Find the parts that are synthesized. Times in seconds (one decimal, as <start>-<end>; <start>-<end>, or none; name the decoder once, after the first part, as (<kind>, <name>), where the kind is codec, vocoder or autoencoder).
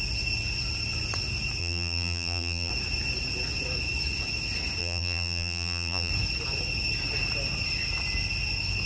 1.6-2.7 (vocoder, BigVGAN v2); 4.8-6.1